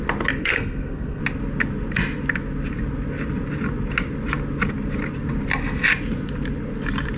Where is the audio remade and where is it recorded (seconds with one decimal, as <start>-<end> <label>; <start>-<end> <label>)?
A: 0.0-0.4 recorded; 0.4-1.2 remade; 1.2-7.2 recorded